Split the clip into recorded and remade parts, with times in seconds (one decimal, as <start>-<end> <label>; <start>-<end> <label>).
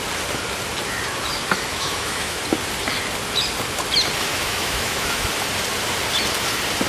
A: 0.0-1.7 recorded; 1.7-2.4 remade; 2.4-4.3 recorded; 4.3-5.3 remade; 5.3-6.9 recorded